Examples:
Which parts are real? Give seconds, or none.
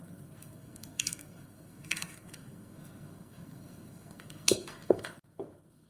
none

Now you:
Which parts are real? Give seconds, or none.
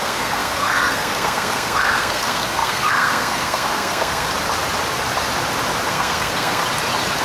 4.3-5.9; 6.6-7.2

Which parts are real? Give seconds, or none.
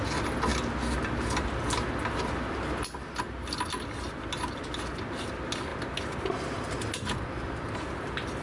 0.0-8.4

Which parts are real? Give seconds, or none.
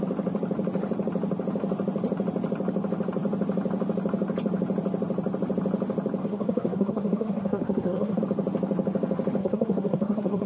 0.0-6.2; 8.2-9.4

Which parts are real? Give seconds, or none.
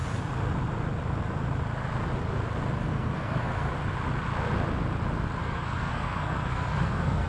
0.0-2.8; 3.7-5.4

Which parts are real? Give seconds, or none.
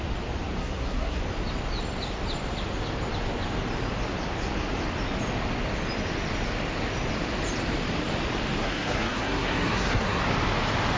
0.0-0.6; 1.2-8.6; 10.2-11.0